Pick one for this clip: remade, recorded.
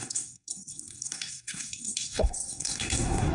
remade